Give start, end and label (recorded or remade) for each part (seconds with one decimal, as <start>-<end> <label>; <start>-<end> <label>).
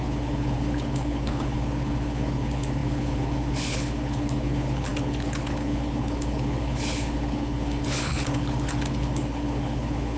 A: 0.0-10.2 remade